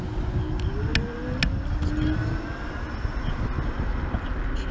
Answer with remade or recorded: recorded